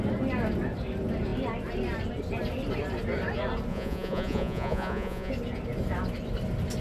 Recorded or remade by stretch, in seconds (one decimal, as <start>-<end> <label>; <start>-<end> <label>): 0.0-3.7 recorded; 3.7-5.3 remade; 5.3-6.8 recorded